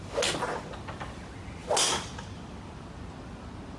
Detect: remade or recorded recorded